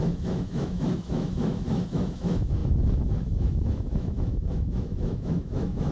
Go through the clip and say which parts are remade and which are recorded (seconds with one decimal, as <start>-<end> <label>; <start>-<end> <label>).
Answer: 0.0-5.9 remade